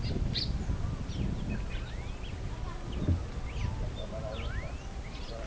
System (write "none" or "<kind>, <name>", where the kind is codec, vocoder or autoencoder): none